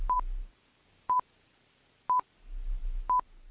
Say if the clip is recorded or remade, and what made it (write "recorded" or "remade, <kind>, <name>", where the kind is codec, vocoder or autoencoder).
recorded